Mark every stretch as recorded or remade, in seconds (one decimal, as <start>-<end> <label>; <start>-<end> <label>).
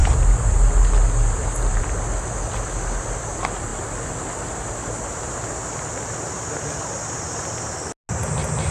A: 0.0-8.7 recorded